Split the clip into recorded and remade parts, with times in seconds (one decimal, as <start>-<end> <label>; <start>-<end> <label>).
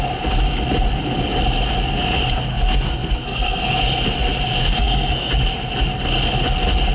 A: 0.0-2.5 recorded; 2.5-3.8 remade; 3.8-4.6 recorded; 4.6-5.3 remade; 5.3-6.9 recorded